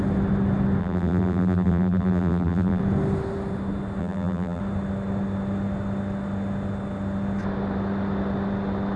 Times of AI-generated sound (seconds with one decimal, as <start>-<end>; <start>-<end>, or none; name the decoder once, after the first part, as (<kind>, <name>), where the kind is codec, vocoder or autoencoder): 0.8-2.8 (vocoder, BigVGAN v2); 4.0-4.6